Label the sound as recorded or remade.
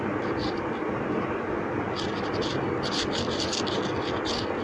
recorded